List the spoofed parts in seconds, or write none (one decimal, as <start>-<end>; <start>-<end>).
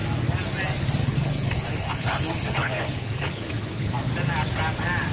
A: 1.0-3.9